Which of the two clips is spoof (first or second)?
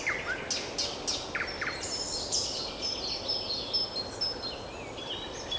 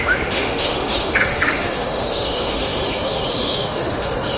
second